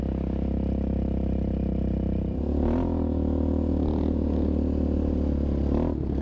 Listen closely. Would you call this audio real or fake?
real